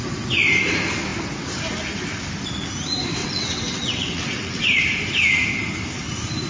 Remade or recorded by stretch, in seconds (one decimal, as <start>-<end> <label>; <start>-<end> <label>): 0.0-3.2 recorded; 3.2-4.8 remade; 4.8-6.5 recorded